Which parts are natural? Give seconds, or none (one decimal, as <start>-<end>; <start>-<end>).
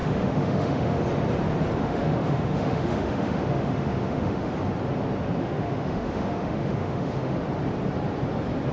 1.0-1.8; 4.5-5.4; 7.4-8.7